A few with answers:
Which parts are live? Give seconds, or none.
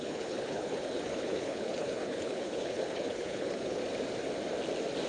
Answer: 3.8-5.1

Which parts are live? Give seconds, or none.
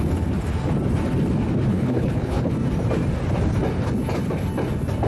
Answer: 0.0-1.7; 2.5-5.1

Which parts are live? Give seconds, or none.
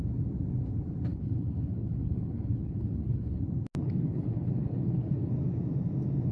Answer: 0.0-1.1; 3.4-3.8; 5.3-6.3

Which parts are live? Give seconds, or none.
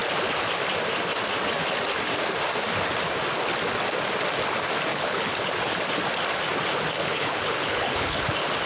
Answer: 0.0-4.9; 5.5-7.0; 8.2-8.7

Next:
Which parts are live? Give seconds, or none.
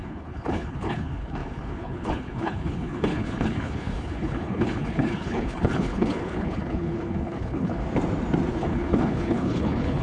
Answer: 7.8-8.5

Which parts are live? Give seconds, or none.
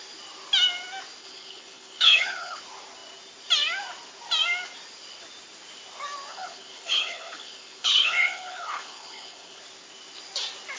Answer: 0.0-1.2; 2.6-6.3; 9.6-10.8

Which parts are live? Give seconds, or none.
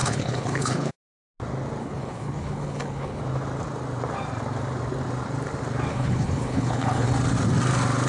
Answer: 0.9-1.8; 3.2-5.9; 7.1-8.1